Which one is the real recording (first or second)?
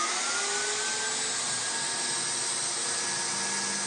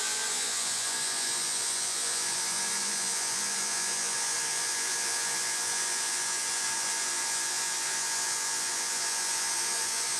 first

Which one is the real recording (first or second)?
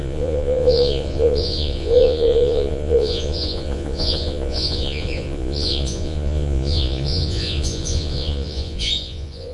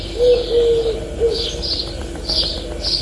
second